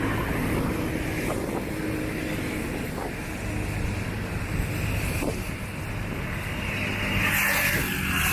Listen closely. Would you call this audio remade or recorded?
recorded